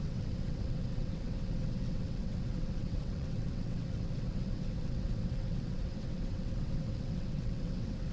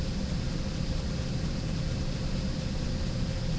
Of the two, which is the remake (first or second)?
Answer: first